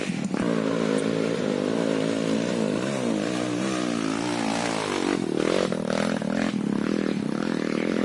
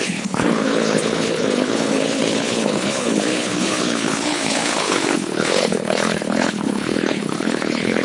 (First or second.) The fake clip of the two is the second